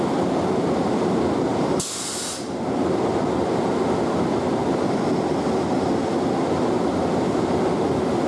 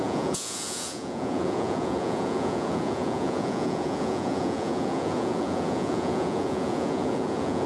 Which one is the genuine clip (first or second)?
first